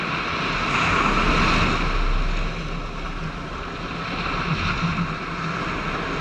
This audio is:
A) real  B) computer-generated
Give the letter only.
A